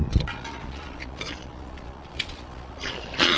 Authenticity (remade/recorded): remade